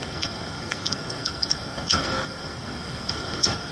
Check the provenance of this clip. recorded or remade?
remade